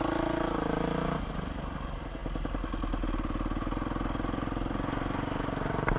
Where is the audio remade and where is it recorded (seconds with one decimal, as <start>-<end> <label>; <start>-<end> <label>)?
0.0-6.0 recorded